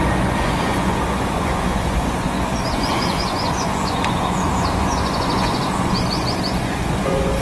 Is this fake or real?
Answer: fake